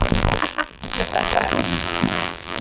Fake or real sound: fake